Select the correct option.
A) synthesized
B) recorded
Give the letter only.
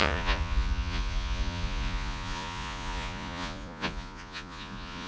A